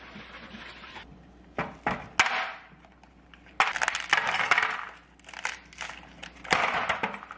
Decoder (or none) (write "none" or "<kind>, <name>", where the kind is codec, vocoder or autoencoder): none